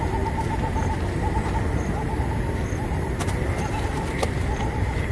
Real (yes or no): yes